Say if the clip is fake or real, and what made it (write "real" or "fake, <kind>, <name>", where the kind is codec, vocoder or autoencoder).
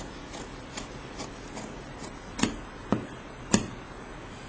real